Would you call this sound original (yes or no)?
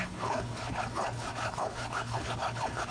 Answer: no